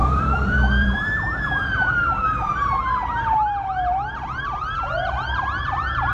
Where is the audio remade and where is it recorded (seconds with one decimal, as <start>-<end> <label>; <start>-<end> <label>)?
0.0-1.4 remade; 1.4-6.1 recorded